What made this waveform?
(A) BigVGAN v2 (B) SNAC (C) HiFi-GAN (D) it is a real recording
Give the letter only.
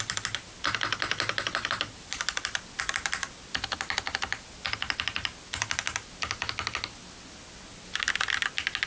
D